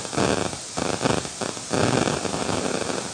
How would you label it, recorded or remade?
recorded